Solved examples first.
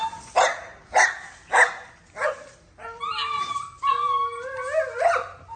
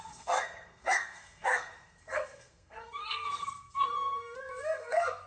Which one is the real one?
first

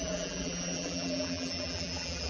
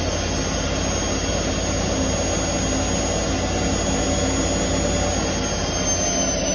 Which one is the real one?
second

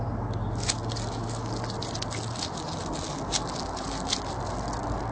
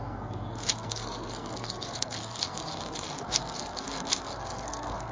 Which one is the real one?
first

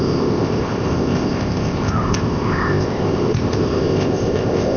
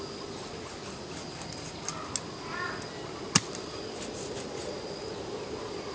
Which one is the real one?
second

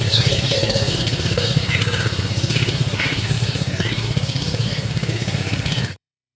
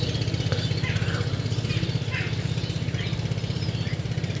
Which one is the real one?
second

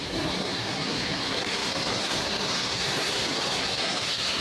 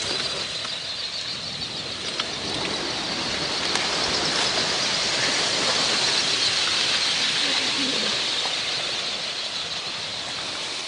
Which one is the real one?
second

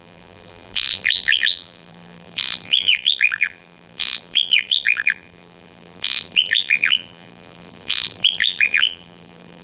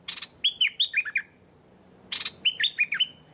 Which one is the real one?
second